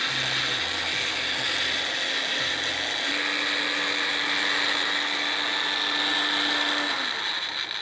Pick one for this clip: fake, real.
real